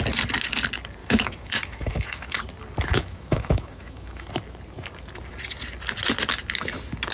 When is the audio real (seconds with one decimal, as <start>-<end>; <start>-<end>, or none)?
0.0-1.0; 2.4-2.9; 4.3-7.1